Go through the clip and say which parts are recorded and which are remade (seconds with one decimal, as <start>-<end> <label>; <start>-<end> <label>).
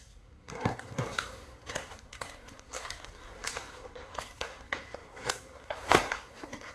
0.0-6.7 remade